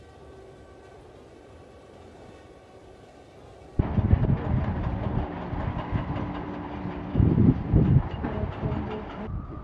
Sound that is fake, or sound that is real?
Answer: real